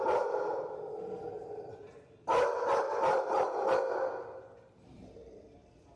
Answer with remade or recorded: recorded